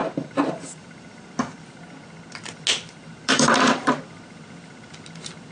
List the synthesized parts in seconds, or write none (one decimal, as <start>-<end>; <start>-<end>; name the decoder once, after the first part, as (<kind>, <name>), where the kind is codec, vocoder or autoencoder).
0.0-1.6 (vocoder, BigVGAN v2); 3.2-4.0